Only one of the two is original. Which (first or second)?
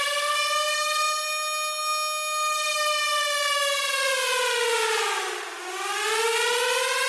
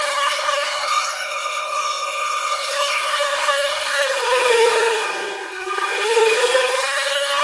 first